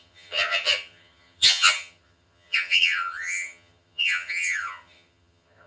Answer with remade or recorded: remade